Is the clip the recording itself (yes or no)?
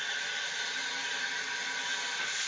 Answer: yes